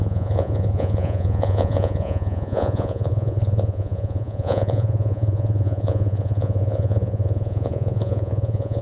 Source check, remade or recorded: remade